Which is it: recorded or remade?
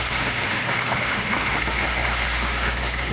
remade